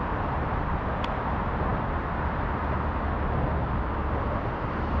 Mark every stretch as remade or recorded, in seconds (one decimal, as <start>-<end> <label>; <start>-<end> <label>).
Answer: 0.0-5.0 recorded

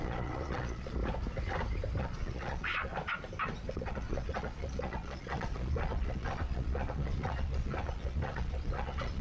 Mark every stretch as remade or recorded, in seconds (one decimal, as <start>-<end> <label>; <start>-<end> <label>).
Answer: 0.0-1.0 remade; 1.0-2.0 recorded; 2.0-2.9 remade; 2.9-3.7 recorded; 3.7-9.2 remade